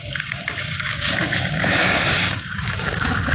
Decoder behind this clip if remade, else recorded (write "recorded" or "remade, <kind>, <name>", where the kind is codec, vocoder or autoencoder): remade, codec, DAC